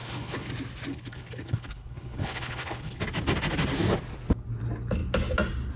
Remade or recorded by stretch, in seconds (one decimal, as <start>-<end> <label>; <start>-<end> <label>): 0.0-0.5 remade; 0.5-0.9 recorded; 0.9-3.0 remade; 3.0-5.8 recorded